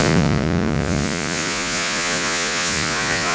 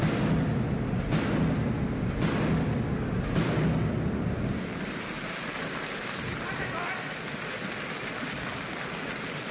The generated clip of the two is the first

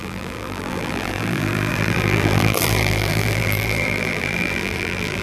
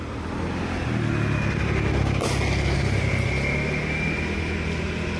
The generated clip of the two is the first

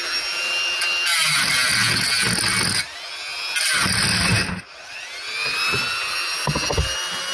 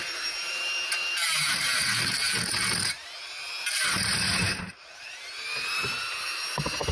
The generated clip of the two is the second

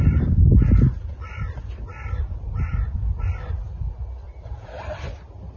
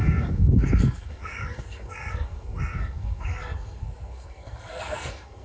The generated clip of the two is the second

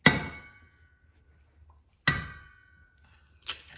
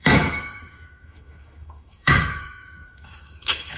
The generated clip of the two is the second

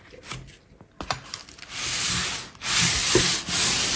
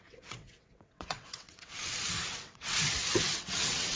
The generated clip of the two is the second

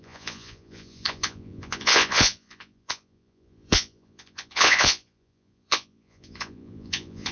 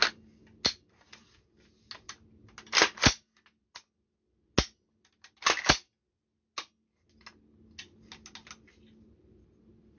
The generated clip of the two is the first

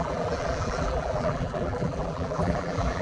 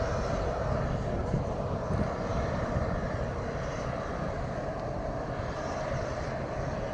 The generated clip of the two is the first